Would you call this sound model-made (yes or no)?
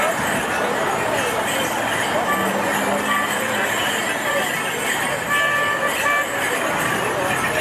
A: no